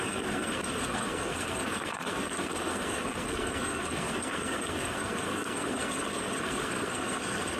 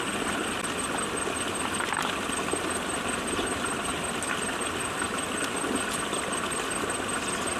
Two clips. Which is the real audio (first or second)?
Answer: second